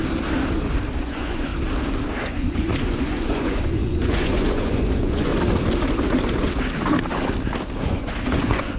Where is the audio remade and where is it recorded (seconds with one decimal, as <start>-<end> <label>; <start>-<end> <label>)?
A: 0.0-1.0 recorded; 1.0-1.5 remade; 1.5-2.2 recorded; 2.2-5.3 remade; 5.3-7.8 recorded; 7.8-8.8 remade